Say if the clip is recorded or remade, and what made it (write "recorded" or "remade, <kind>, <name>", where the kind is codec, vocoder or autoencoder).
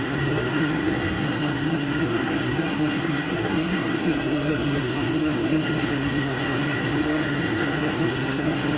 remade, codec, SNAC